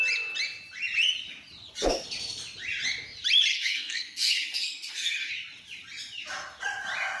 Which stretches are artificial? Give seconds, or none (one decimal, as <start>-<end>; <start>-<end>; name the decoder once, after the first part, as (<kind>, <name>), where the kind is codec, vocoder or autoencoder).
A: 3.5-5.3 (codec, SNAC)